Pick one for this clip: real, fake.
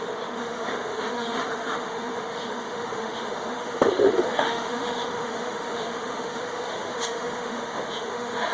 fake